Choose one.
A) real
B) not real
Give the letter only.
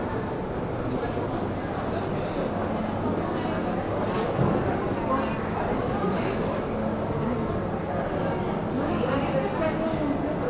A